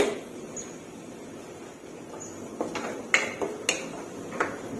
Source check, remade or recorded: recorded